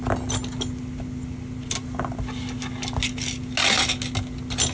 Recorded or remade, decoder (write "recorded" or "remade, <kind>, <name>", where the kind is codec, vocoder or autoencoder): recorded